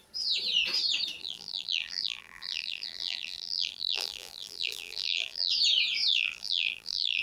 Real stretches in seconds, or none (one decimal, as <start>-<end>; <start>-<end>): 0.0-1.2; 5.5-6.1